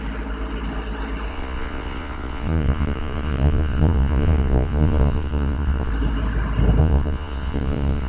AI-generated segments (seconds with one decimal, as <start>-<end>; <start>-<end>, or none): 1.3-5.9; 6.8-8.1